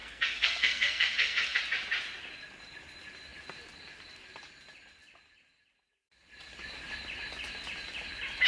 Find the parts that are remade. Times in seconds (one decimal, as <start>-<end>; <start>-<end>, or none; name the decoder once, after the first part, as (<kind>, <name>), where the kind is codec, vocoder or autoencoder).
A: 0.0-1.6 (codec, SNAC)